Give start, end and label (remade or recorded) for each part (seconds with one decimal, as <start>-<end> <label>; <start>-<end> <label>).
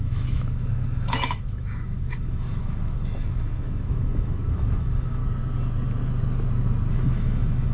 0.0-5.2 remade; 5.2-6.9 recorded; 6.9-7.7 remade